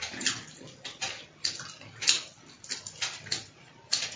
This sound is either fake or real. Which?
real